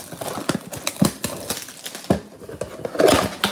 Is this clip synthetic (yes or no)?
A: no